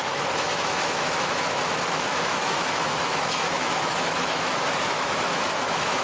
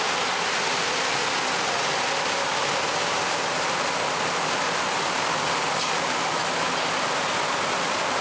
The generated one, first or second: first